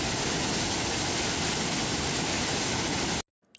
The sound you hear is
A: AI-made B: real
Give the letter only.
B